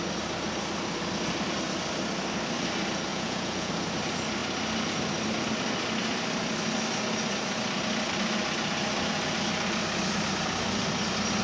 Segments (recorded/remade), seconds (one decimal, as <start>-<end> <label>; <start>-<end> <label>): 0.0-3.1 recorded; 3.1-3.7 remade; 3.7-11.4 recorded